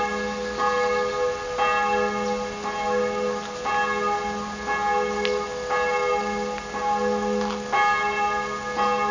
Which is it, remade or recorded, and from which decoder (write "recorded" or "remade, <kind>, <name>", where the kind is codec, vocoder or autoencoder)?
recorded